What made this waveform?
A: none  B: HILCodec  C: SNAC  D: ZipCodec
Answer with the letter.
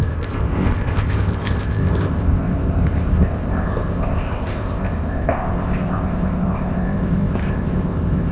D